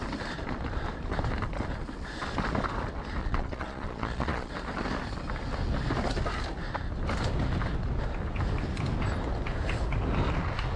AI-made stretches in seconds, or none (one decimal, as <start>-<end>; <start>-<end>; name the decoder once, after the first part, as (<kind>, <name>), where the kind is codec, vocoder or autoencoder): 3.2-4.5 (vocoder, Vocos)